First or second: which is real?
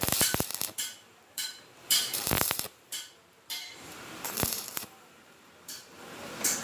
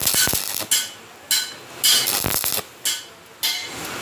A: second